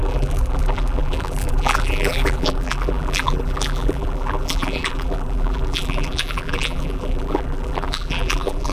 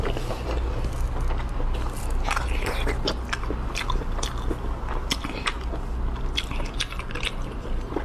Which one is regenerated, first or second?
first